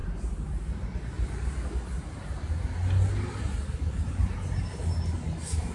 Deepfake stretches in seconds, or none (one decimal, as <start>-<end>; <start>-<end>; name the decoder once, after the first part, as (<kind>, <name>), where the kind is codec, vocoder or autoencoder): none